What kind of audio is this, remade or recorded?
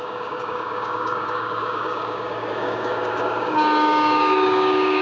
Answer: remade